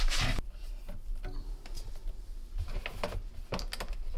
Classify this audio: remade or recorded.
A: recorded